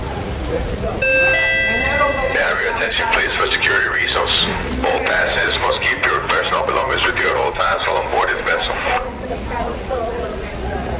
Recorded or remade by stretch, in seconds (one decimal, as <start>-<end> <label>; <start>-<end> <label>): 0.0-0.9 remade; 0.9-1.8 recorded; 1.8-11.0 remade